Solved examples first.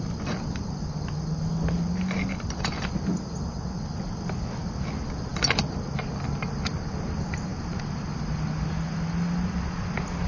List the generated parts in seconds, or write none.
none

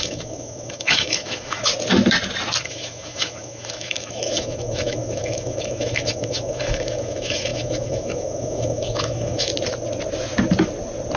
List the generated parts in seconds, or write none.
0.0-1.7; 2.6-9.5

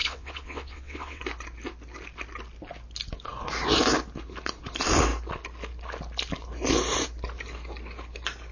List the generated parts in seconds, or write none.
0.0-1.2

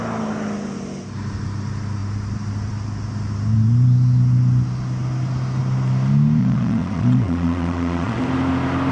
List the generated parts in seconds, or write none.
6.4-8.2

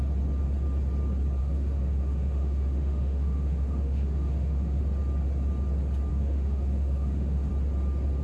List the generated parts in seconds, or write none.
1.4-4.8; 6.1-7.5

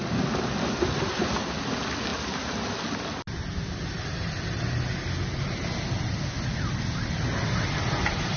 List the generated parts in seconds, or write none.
none

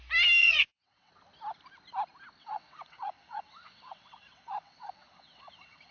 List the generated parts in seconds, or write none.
0.4-1.1; 2.4-5.9